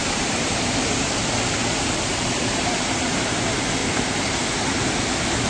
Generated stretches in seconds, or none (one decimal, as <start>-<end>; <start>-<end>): 0.0-0.5; 1.6-3.2; 3.8-5.1